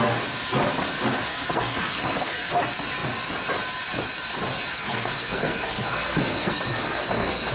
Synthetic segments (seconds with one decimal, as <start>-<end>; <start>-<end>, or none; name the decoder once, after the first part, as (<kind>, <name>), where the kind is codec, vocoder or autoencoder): 1.3-2.5 (codec, SNAC); 4.7-7.5